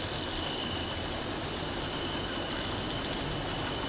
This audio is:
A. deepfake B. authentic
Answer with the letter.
B